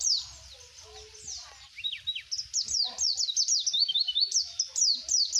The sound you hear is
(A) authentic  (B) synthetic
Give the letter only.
A